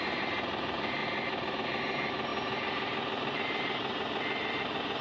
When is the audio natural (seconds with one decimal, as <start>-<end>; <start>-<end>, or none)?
1.0-1.5; 2.3-3.3; 3.9-4.4